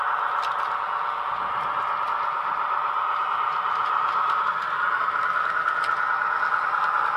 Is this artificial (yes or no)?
no